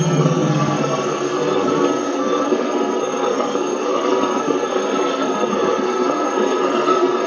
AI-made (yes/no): yes